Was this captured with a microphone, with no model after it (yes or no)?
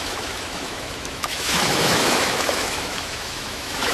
no